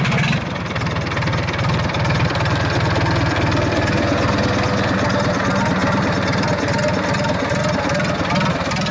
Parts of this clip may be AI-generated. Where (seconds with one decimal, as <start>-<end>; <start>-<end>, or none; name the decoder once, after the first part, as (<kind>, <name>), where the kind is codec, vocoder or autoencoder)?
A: none